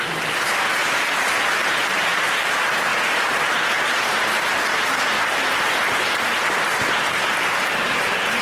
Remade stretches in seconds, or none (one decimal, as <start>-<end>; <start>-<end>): 0.0-2.9; 6.6-8.4